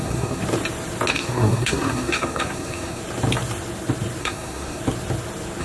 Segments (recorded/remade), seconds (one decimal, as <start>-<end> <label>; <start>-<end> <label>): 0.0-0.4 remade; 0.4-1.1 recorded; 1.1-3.0 remade; 3.0-4.2 recorded; 4.2-4.8 remade; 4.8-5.6 recorded